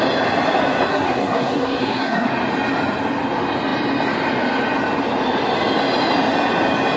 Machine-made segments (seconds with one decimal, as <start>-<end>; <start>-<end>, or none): 0.9-2.3